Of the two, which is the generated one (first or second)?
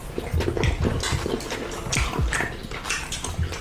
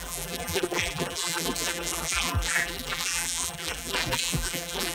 second